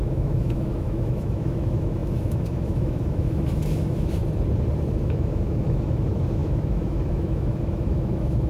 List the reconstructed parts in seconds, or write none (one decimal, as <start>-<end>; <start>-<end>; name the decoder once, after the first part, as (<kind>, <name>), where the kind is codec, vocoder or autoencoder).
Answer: 0.0-4.2 (autoencoder, DAC-VAE); 4.9-8.5